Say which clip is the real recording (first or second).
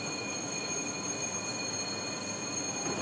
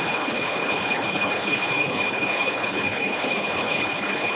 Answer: first